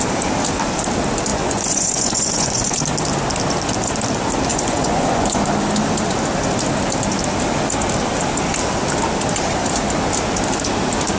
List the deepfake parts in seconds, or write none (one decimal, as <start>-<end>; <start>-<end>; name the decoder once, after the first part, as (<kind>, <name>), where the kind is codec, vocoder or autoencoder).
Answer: 1.3-2.8 (vocoder, Vocos); 4.5-5.4